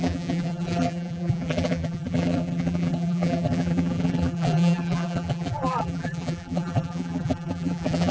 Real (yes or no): no